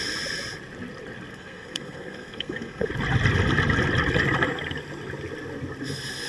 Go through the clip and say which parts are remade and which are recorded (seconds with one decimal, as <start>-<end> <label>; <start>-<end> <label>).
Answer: 0.0-1.3 recorded; 1.3-2.9 remade; 2.9-6.3 recorded